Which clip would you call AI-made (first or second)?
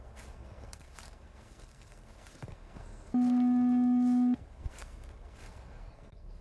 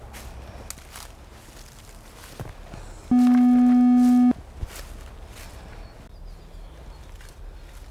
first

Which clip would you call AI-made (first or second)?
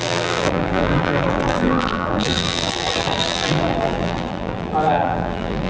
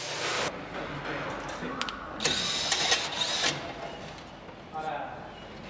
first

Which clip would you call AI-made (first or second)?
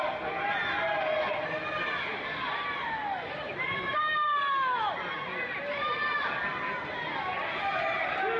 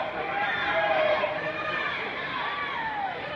second